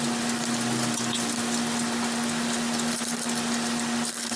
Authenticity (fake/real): real